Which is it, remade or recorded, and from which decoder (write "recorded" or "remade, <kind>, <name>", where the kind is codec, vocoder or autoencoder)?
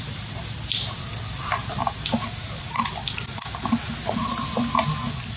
recorded